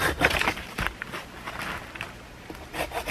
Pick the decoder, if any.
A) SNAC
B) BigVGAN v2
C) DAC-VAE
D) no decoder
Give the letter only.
D